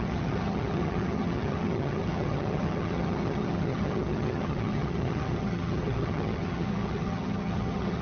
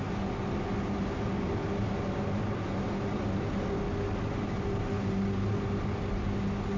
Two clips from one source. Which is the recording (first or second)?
second